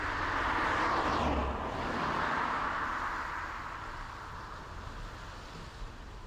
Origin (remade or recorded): recorded